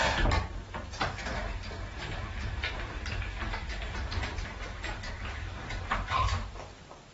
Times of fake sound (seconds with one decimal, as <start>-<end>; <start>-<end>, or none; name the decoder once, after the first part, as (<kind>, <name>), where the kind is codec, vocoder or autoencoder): 3.6-6.5 (vocoder, BigVGAN v2)